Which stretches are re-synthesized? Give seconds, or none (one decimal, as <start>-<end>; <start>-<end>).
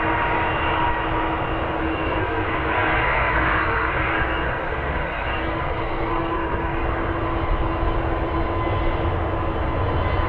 1.8-6.8